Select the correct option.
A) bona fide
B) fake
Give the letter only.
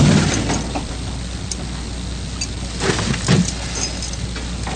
A